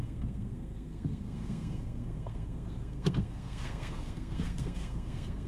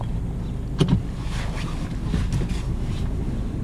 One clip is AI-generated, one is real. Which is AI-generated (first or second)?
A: first